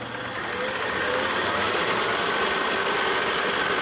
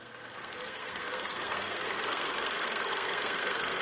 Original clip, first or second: first